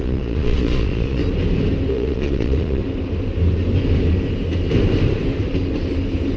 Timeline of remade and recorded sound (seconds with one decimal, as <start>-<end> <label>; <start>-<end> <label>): 0.0-1.2 remade; 1.2-1.9 recorded; 1.9-2.8 remade; 2.8-6.4 recorded